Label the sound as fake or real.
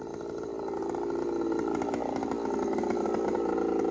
real